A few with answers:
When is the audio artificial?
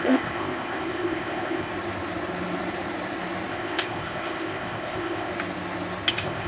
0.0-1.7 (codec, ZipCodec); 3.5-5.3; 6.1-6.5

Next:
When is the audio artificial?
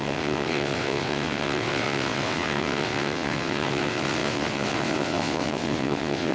0.0-6.3 (vocoder, WaveNeXt)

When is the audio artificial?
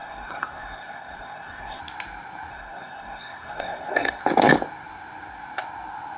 0.0-1.8 (codec, SNAC); 2.5-4.2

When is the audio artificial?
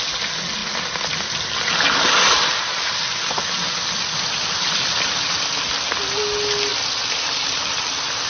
6.7-7.8 (vocoder, BigVGAN v2)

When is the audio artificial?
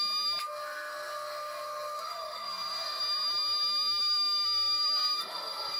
0.4-3.0 (codec, SNAC); 4.0-5.8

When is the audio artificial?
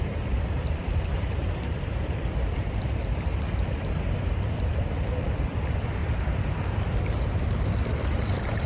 0.0-8.7 (vocoder, BigVGAN v2)